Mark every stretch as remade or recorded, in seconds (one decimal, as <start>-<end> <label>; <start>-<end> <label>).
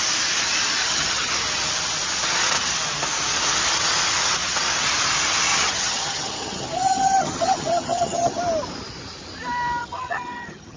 0.0-0.8 recorded; 0.8-1.3 remade; 1.3-5.5 recorded; 5.5-8.4 remade; 8.4-9.8 recorded; 9.8-10.8 remade